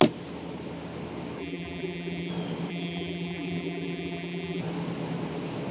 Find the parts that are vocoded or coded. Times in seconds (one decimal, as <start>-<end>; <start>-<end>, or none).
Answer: 1.4-2.3; 2.7-4.6